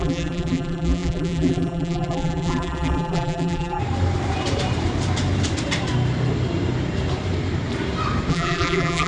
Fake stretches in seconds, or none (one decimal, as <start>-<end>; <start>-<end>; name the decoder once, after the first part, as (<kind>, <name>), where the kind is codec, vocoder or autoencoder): 0.0-3.8 (vocoder, BigVGAN v2); 8.3-9.1